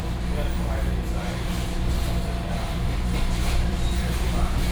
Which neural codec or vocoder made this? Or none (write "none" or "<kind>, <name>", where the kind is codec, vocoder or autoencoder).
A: vocoder, BigVGAN v2